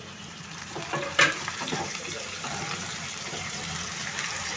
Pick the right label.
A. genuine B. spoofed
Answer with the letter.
B